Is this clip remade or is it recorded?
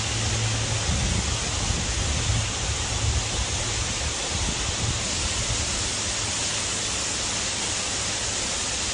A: recorded